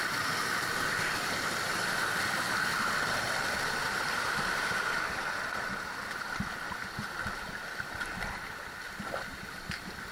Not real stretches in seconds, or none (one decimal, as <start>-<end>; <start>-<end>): none